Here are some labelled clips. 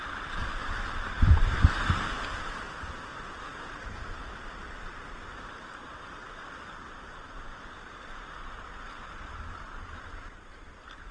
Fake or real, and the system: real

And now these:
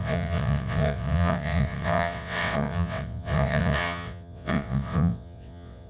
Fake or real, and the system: fake, vocoder, WaveNeXt